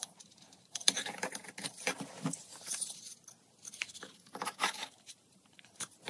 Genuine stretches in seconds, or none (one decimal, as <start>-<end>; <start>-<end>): 2.5-3.8